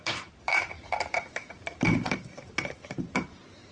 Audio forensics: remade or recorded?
remade